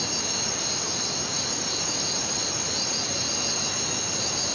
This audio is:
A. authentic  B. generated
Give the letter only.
A